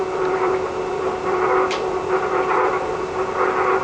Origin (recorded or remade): remade